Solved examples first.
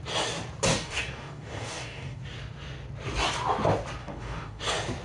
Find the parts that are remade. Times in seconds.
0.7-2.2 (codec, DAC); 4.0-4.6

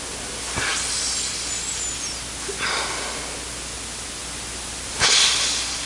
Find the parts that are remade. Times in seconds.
none

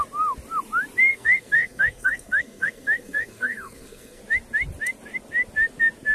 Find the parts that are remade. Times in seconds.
1.1-4.2 (codec, SNAC)

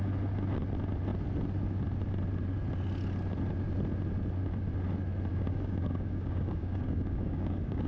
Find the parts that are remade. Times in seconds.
5.3-7.9 (codec, DAC)